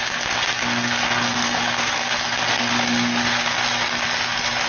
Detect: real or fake real